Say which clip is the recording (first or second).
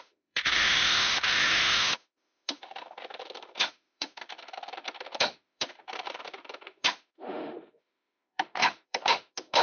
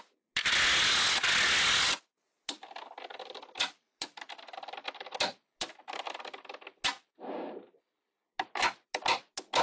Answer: second